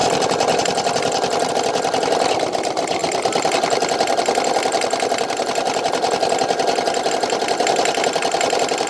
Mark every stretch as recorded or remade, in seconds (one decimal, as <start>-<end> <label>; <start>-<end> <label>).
0.0-1.5 remade; 1.5-8.9 recorded